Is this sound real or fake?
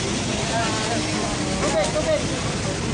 real